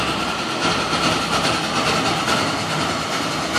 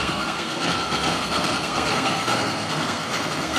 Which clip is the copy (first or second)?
second